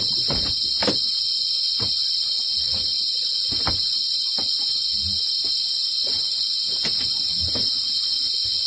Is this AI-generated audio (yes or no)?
no